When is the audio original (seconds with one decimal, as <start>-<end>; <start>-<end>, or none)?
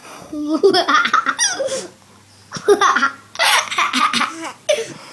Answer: 0.7-5.1